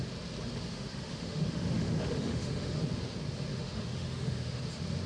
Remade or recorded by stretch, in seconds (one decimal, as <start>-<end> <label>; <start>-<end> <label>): 0.0-0.7 recorded; 0.7-2.8 remade; 2.8-3.5 recorded; 3.5-4.6 remade; 4.6-5.1 recorded